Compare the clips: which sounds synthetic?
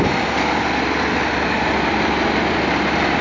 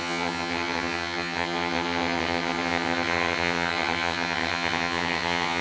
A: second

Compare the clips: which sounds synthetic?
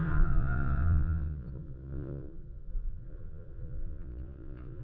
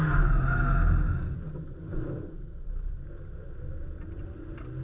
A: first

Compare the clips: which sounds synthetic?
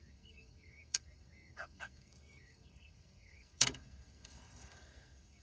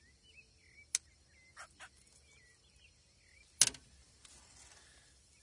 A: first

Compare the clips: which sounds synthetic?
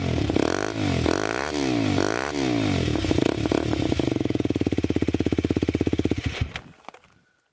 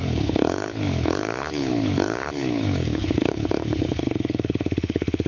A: second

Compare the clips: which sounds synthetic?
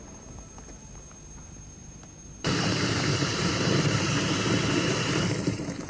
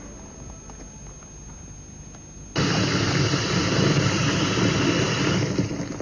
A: first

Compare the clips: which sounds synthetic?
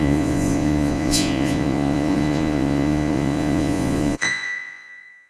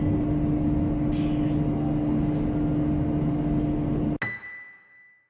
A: first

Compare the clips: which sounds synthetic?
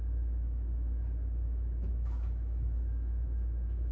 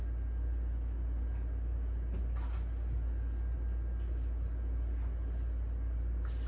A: first